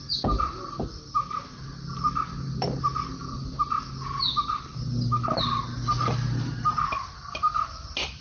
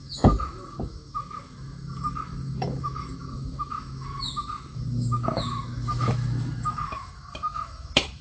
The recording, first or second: first